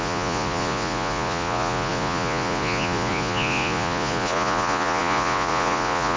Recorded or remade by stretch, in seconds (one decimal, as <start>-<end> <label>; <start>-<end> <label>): 0.0-6.2 remade